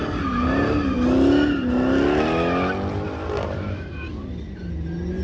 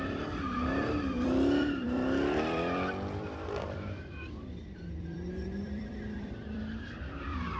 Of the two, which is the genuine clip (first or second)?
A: first